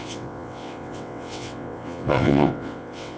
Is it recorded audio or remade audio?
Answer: remade